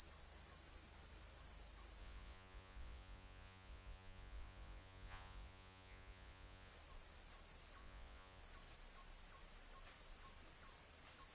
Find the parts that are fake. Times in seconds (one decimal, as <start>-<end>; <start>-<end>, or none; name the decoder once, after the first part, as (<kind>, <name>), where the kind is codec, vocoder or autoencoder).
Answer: 2.0-6.7 (vocoder, Vocos); 7.8-8.4